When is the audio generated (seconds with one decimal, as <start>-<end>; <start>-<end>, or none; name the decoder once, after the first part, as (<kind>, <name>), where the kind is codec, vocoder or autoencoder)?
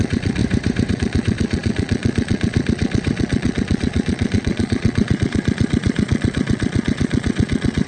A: 0.0-0.4 (vocoder, Vocos); 0.9-7.9